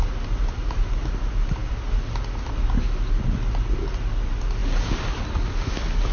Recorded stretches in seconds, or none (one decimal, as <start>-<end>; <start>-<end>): 0.0-6.1